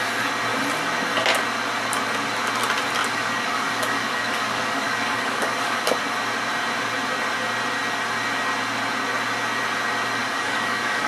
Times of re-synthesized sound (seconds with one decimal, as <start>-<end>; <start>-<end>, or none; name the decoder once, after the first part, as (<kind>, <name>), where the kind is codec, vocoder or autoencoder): 3.0-5.9 (codec, DAC); 10.2-11.1